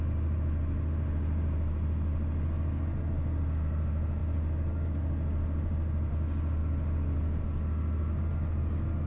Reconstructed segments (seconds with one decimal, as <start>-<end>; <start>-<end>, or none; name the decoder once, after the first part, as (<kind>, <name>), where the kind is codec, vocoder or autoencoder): none